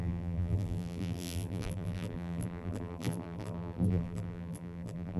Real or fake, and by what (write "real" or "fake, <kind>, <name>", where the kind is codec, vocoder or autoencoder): fake, vocoder, BigVGAN v2